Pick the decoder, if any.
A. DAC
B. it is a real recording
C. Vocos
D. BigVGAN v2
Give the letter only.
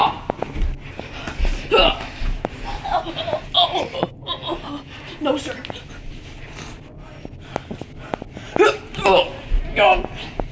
B